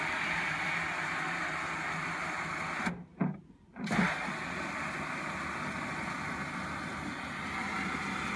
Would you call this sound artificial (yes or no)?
no